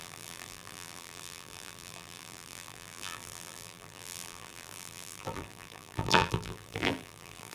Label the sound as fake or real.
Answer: fake